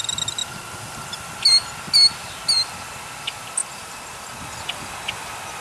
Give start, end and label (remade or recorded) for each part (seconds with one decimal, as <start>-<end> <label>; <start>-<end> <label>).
0.0-5.6 recorded